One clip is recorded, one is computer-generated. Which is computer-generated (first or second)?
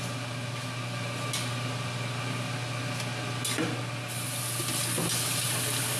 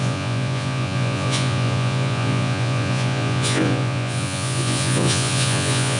second